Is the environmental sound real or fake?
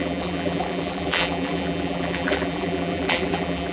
fake